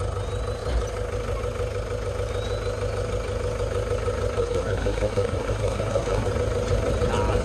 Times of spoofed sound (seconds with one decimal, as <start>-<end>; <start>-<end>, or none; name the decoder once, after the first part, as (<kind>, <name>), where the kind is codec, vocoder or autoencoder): 4.4-6.3 (codec, SNAC)